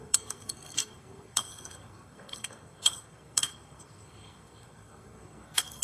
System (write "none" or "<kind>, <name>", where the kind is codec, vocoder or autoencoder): codec, SNAC